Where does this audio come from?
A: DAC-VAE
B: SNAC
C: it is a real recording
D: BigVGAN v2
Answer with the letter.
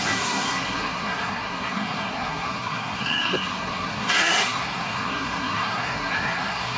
B